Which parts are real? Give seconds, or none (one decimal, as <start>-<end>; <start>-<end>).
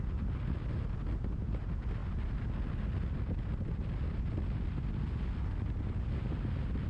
0.0-6.9